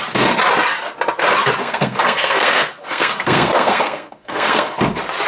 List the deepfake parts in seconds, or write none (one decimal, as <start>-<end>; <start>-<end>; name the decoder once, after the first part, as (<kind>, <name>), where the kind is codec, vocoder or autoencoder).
1.6-4.8 (codec, SNAC)